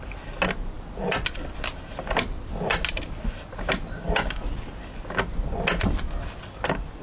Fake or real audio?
real